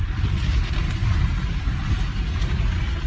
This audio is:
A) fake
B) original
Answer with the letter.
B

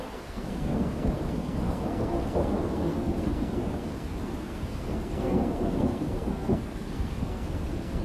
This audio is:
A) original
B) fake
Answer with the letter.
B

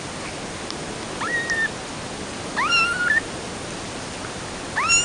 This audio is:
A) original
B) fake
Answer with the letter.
A